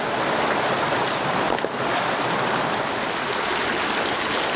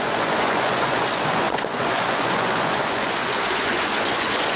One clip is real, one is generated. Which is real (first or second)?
first